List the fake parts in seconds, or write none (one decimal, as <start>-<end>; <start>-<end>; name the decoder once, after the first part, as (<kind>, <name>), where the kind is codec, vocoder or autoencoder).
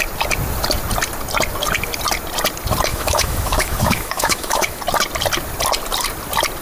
2.9-4.8 (autoencoder, DAC-VAE)